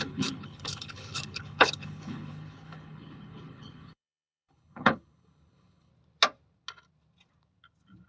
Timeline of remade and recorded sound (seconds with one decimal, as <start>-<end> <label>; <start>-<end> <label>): 0.0-5.9 remade; 5.9-8.1 recorded

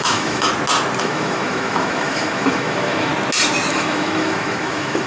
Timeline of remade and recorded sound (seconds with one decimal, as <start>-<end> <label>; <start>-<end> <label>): 0.0-0.5 remade; 0.5-1.0 recorded; 1.0-3.1 remade; 3.1-3.7 recorded; 3.7-5.1 remade

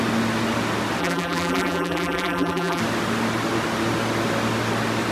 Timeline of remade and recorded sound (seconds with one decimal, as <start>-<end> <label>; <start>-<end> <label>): 0.0-1.0 recorded; 1.0-2.8 remade; 2.8-5.1 recorded

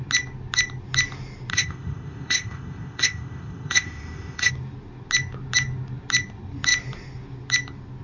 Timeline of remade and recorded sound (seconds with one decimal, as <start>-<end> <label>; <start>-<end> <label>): 0.0-1.5 recorded; 1.5-4.5 remade; 4.5-8.0 recorded

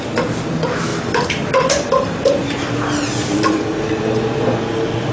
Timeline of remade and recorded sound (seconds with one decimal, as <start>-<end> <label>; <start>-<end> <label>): 0.0-0.9 recorded; 0.9-4.0 remade; 4.0-5.1 recorded

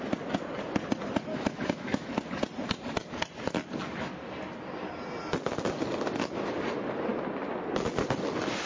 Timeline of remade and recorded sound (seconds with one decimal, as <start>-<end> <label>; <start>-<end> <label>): 0.0-1.3 recorded; 1.3-2.1 remade; 2.1-8.7 recorded

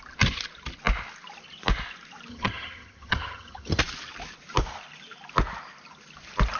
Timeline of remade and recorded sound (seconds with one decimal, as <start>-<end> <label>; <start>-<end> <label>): 0.0-2.3 recorded; 2.3-3.8 remade; 3.8-6.6 recorded

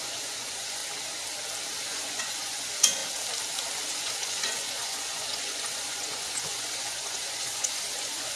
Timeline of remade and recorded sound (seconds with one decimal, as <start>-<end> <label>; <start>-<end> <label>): 0.0-0.8 remade; 0.8-1.8 recorded; 1.8-3.0 remade; 3.0-3.9 recorded; 3.9-8.4 remade